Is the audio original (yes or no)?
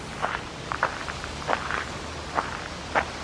no